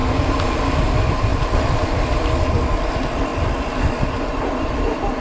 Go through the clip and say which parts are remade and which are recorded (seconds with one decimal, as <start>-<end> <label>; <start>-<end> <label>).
0.0-1.3 recorded; 1.3-2.9 remade; 2.9-3.3 recorded; 3.3-4.7 remade; 4.7-5.2 recorded